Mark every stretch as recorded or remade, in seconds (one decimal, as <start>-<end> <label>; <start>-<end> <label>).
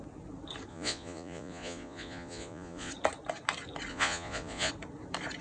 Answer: 0.0-0.7 recorded; 0.7-2.9 remade; 2.9-3.9 recorded; 3.9-4.7 remade; 4.7-5.4 recorded